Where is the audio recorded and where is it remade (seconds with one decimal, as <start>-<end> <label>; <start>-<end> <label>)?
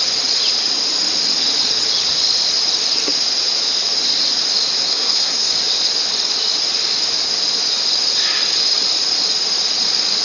0.0-4.8 recorded; 4.8-5.5 remade; 5.5-10.2 recorded